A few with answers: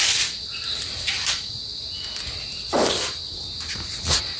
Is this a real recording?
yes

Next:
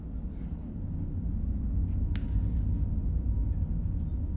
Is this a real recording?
yes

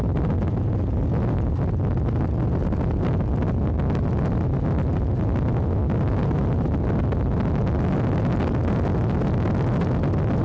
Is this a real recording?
yes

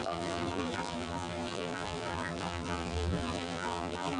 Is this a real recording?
no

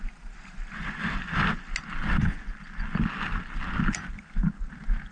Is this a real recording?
yes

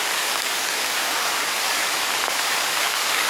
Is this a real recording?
no